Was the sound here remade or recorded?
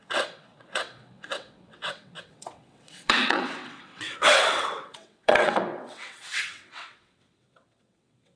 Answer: remade